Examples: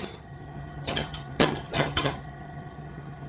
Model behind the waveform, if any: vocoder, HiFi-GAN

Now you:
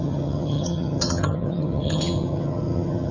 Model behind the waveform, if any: vocoder, HiFi-GAN